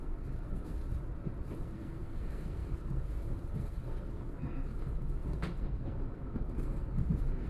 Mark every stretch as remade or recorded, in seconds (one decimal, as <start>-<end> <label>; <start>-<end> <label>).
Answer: 0.0-0.8 remade; 0.8-1.6 recorded; 1.6-7.5 remade